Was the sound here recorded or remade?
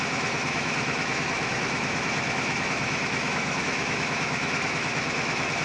remade